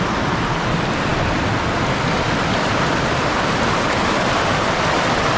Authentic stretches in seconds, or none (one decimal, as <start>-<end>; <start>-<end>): 0.0-5.4